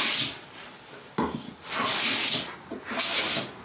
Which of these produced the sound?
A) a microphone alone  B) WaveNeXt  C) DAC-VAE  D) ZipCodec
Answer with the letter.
A